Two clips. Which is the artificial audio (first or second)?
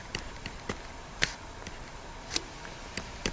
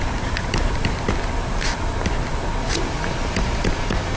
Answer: first